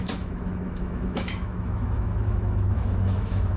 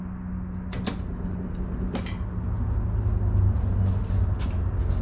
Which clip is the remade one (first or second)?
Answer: first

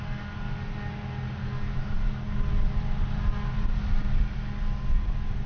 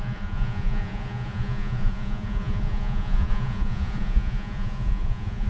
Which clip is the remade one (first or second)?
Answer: second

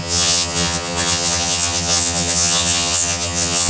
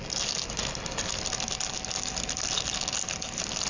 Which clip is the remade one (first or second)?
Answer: first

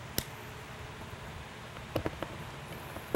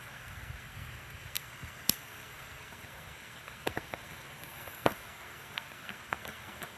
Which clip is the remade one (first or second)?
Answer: second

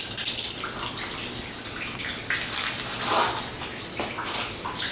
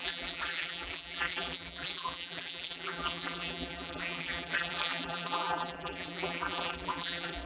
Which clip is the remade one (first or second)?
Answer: second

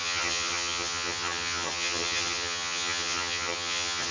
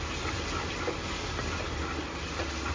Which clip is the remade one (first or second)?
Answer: first